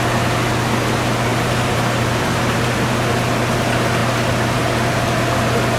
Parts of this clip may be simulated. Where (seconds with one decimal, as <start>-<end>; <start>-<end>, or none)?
1.3-2.9